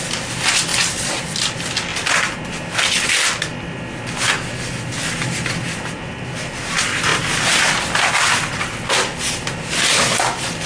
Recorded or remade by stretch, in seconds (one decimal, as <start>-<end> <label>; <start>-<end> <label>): 0.0-10.7 recorded